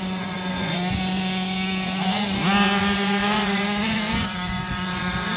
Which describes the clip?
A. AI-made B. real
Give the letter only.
A